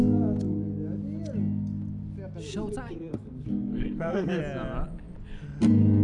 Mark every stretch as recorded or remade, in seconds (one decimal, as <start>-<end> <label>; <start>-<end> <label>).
0.0-3.0 recorded; 3.0-4.4 remade; 4.4-6.0 recorded